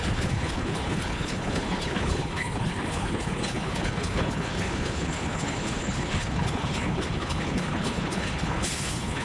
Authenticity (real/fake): fake